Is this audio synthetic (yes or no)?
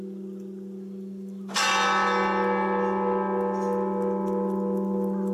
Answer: no